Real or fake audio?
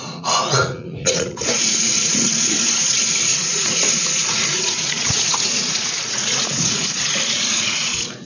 fake